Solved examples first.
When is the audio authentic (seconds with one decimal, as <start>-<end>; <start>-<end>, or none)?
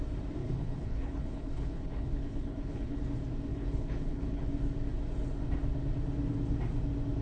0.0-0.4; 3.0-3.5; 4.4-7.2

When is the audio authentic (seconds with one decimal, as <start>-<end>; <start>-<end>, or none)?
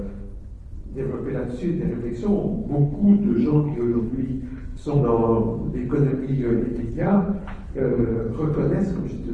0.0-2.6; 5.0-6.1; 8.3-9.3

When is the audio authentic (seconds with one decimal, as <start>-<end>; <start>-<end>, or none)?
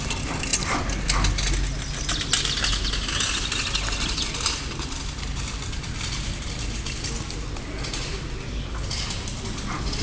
0.0-10.0